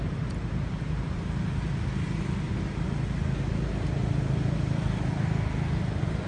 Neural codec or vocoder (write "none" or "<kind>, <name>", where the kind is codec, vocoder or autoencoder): none